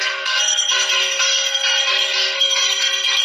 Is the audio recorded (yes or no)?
no